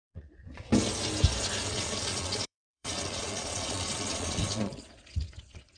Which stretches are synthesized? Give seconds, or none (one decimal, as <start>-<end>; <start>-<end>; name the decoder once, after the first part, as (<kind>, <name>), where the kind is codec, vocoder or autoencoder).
0.0-0.7 (vocoder, Vocos); 1.7-5.8